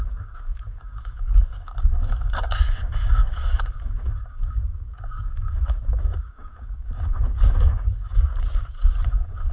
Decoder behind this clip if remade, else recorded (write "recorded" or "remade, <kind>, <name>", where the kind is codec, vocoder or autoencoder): remade, codec, DAC